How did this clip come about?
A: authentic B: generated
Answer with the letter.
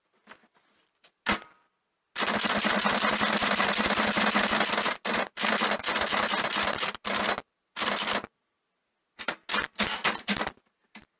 A